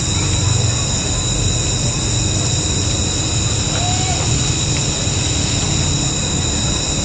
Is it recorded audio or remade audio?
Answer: recorded